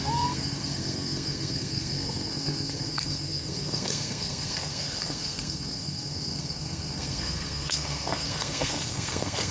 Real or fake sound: fake